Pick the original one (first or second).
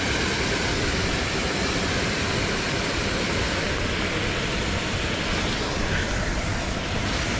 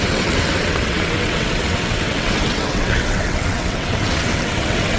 first